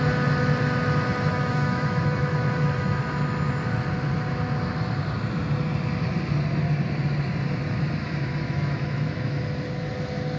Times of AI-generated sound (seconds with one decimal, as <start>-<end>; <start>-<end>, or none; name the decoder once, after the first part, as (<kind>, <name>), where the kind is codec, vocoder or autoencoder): 1.3-3.0 (autoencoder, DAC-VAE); 8.0-9.4